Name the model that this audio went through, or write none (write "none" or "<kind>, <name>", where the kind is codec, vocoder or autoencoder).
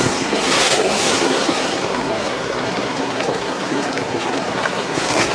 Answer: codec, SNAC